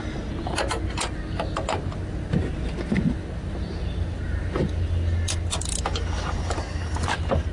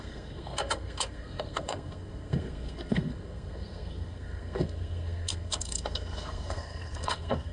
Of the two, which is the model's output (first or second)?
second